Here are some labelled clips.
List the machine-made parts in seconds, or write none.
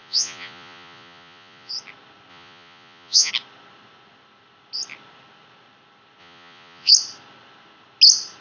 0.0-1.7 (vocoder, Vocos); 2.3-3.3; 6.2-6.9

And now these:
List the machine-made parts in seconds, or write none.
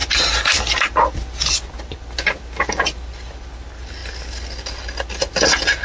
none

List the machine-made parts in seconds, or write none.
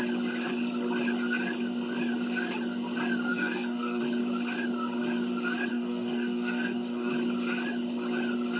3.3-4.0 (codec, SNAC); 5.7-7.1